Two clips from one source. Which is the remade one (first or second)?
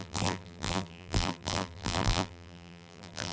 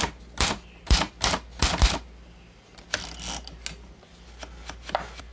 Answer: first